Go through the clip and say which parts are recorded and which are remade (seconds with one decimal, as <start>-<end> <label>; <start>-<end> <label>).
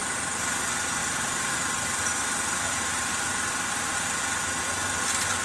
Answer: 0.0-1.0 recorded; 1.0-4.2 remade; 4.2-5.4 recorded